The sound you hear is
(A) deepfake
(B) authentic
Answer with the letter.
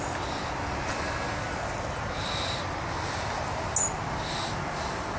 B